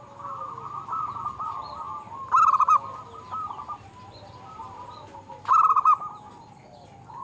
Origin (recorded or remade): recorded